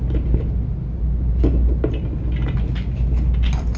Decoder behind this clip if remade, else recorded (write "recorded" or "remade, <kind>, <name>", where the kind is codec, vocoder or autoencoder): recorded